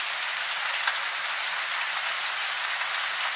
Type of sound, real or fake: real